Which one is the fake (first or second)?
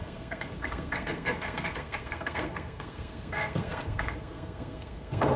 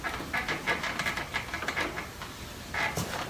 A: first